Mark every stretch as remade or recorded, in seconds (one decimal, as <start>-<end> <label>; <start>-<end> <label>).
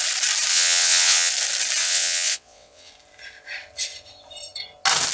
0.0-0.5 recorded; 0.5-1.3 remade; 1.3-1.8 recorded; 1.8-2.9 remade; 2.9-5.1 recorded